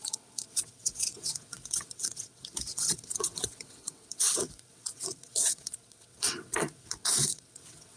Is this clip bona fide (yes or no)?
no